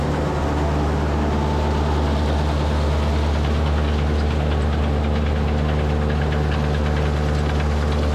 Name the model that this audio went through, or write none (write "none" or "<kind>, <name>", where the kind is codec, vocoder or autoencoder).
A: none